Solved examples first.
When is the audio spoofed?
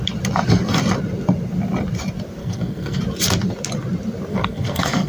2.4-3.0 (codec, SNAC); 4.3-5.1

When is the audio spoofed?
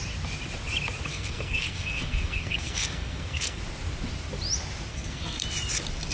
1.1-3.6 (codec, SNAC); 4.9-5.4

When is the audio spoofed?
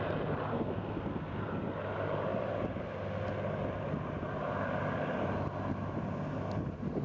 0.5-1.5 (codec, SNAC)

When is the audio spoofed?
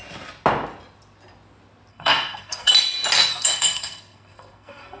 1.9-2.7 (codec, SNAC); 3.3-5.0